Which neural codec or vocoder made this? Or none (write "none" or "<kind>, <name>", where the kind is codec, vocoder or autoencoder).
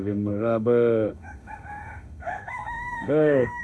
autoencoder, DAC-VAE